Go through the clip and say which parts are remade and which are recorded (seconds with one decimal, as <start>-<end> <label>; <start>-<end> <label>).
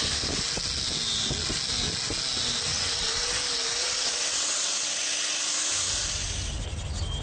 0.0-2.7 recorded; 2.7-3.3 remade; 3.3-3.8 recorded; 3.8-5.0 remade; 5.0-7.2 recorded